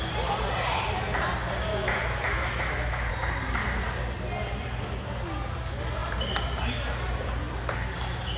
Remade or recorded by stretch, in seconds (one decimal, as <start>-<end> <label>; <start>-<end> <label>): 0.0-1.7 recorded; 1.7-3.1 remade; 3.1-8.4 recorded